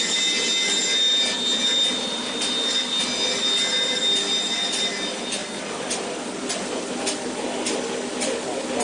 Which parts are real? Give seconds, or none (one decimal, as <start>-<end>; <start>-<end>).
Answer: 0.0-8.8